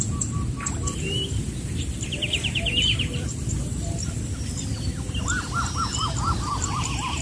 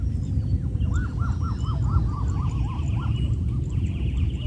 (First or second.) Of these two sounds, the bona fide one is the second